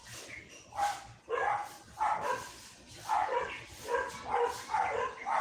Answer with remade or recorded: recorded